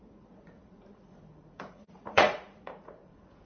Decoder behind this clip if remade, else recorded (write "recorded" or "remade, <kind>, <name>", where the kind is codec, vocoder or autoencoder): remade, vocoder, Vocos